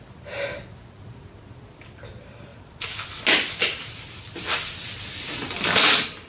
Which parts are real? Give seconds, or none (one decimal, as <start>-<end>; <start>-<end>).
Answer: 0.0-6.3

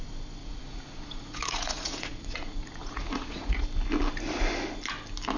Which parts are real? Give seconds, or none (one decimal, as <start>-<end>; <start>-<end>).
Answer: 0.0-0.4; 3.6-5.4

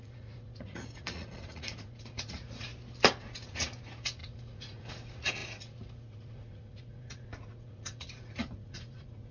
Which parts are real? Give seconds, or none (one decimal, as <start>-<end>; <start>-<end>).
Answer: 2.7-3.2

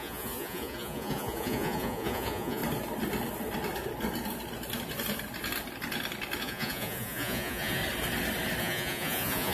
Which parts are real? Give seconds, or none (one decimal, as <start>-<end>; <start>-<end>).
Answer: 2.6-6.4; 7.8-8.6

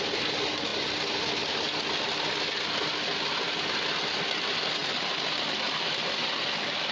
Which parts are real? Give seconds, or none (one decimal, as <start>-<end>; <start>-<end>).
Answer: 0.0-6.9

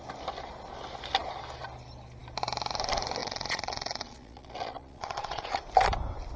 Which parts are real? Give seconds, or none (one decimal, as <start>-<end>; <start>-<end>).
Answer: 0.0-3.2; 5.6-6.4

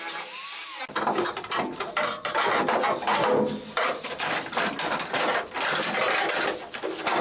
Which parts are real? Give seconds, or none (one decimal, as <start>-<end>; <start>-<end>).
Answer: 0.0-7.2

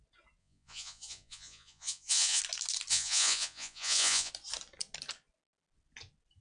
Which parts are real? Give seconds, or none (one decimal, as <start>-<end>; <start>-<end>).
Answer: 0.0-0.4; 2.4-2.9; 4.3-6.4